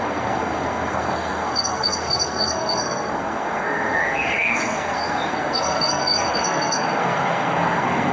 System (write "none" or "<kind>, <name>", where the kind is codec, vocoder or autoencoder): codec, SNAC